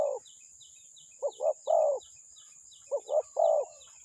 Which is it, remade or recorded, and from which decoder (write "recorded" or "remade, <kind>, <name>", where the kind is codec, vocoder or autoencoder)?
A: recorded